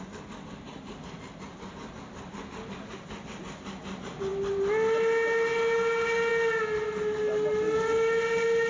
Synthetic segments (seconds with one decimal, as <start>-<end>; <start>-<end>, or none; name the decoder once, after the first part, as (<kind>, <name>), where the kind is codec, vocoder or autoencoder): none